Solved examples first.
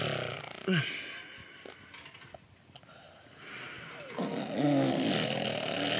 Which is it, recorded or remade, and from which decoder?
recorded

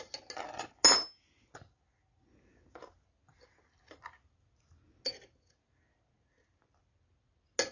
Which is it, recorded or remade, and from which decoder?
recorded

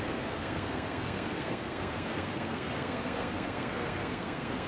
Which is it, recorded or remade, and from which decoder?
remade, codec, SNAC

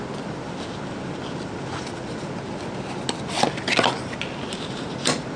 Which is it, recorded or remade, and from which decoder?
recorded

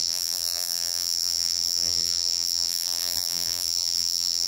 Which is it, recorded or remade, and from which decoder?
remade, vocoder, BigVGAN v2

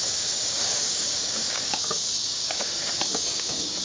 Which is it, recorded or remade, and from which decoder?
remade, codec, DAC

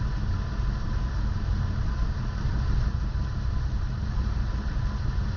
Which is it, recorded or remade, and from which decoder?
recorded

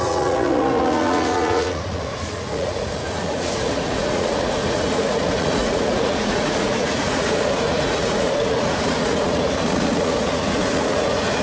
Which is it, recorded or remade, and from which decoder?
remade, vocoder, Vocos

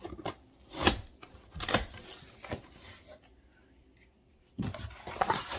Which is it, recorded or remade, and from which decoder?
recorded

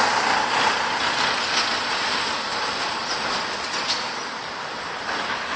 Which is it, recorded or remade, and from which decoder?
recorded